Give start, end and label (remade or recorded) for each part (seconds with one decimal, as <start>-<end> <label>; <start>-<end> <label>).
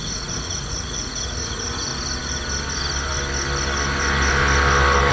0.0-1.9 remade; 1.9-5.1 recorded